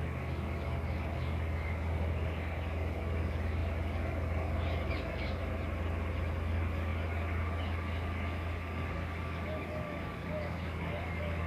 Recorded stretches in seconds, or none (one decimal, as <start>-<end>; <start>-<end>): 5.4-6.3